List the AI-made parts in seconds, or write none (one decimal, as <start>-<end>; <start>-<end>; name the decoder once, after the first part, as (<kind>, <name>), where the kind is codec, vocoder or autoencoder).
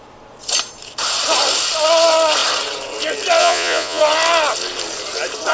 3.4-4.0 (vocoder, Vocos)